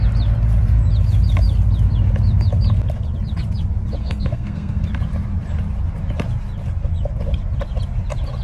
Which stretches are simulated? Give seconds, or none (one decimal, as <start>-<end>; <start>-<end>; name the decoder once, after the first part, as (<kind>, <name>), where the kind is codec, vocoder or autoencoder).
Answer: 4.0-4.8 (codec, SNAC)